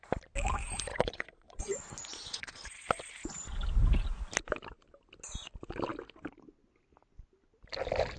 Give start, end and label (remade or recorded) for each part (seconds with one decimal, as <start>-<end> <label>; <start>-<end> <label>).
0.0-0.9 recorded; 0.9-1.6 remade; 1.6-2.1 recorded; 2.1-3.1 remade; 3.1-8.2 recorded